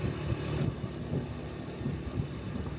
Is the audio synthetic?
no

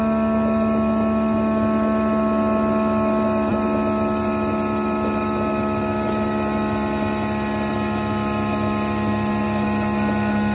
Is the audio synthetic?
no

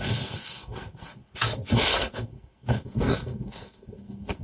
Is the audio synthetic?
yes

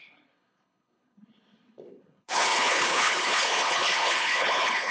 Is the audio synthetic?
yes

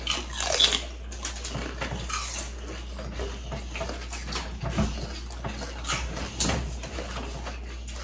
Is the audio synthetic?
no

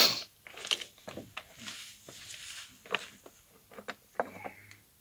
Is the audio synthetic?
no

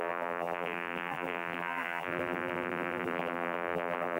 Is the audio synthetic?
yes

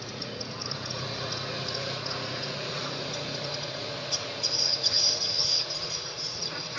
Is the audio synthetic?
yes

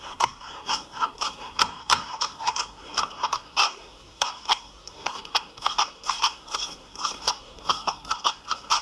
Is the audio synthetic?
yes